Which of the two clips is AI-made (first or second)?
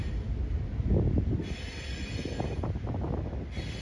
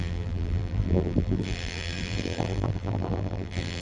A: second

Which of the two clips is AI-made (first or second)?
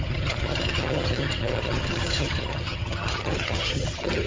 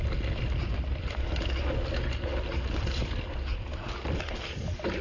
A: first